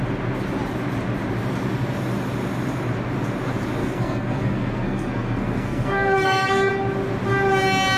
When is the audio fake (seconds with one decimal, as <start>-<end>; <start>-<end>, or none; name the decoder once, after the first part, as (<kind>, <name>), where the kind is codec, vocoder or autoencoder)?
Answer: 3.8-6.7 (codec, SNAC)